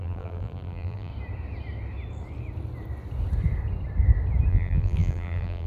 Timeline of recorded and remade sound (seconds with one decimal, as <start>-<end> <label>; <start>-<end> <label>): 0.0-1.1 remade; 1.1-4.5 recorded; 4.5-5.7 remade